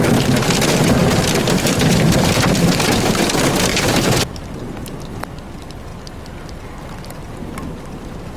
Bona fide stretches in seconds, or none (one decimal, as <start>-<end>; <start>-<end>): 0.0-1.0; 3.1-3.7; 4.8-8.4